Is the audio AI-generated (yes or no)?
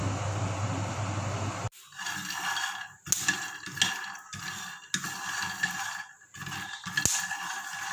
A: no